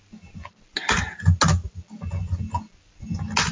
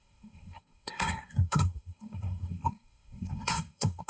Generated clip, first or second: second